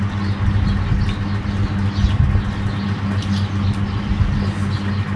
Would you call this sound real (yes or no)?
yes